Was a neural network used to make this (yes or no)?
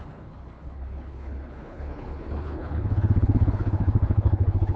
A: yes